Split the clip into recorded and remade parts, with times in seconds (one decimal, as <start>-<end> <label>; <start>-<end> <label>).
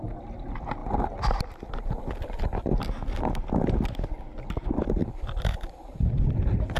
0.0-6.8 recorded